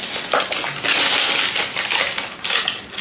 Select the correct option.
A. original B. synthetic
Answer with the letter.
A